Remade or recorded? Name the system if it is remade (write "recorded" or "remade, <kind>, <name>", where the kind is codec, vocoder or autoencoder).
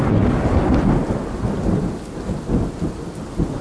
recorded